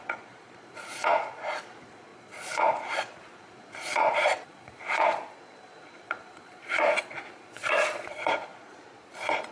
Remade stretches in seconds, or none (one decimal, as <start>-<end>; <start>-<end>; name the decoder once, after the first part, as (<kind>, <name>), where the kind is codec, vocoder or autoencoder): 0.0-9.5 (vocoder, Vocos)